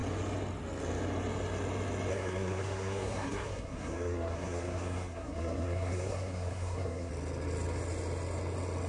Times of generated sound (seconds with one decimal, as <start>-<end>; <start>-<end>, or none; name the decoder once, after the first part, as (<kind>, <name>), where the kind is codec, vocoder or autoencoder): 2.1-7.1 (codec, SNAC)